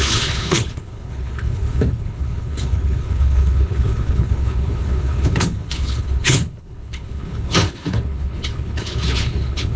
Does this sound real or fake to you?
fake